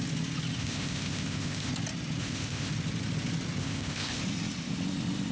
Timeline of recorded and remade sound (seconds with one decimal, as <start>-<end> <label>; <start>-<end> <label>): 0.0-0.6 recorded; 0.6-1.7 remade; 1.7-2.2 recorded; 2.2-2.7 remade; 2.7-3.6 recorded; 3.6-4.2 remade; 4.2-5.3 recorded